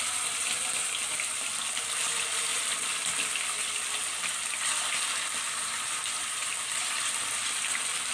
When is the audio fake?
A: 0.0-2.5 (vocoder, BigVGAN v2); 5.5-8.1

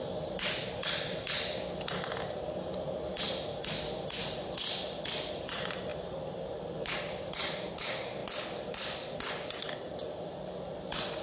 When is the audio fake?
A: 5.9-7.7 (vocoder, BigVGAN v2)

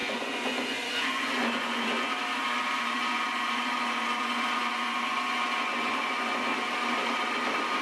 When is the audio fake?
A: 0.0-2.1 (vocoder, Vocos); 2.7-6.5